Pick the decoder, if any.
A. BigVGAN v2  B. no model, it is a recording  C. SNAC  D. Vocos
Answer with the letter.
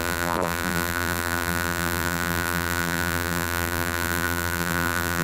A